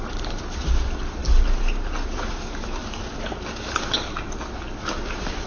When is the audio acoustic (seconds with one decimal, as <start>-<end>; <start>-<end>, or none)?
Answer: 0.0-5.5